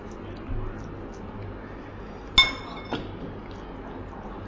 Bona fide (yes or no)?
yes